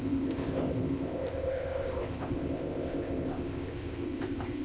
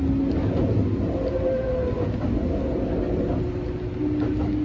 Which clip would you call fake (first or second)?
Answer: first